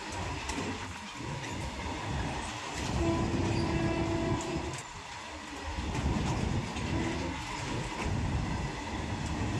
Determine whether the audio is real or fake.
real